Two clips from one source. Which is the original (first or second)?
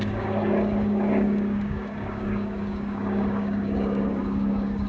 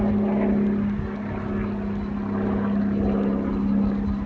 second